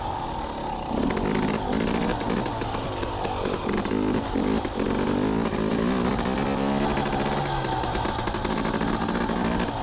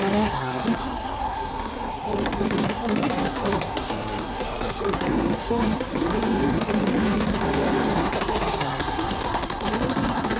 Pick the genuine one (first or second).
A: first